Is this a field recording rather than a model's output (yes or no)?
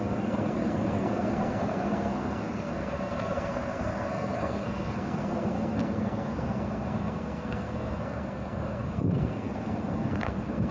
no